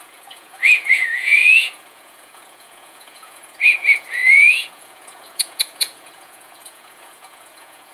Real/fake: fake